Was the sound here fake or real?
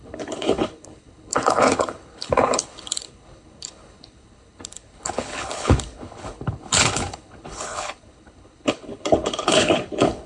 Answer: fake